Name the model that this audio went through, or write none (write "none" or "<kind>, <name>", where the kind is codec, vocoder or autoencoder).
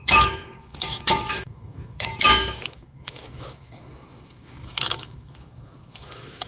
autoencoder, DAC-VAE